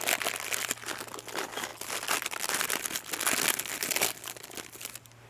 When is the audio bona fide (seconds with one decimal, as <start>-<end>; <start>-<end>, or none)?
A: 0.0-5.3